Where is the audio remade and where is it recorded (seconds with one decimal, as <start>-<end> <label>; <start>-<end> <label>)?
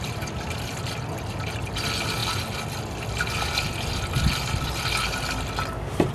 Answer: 0.0-6.1 recorded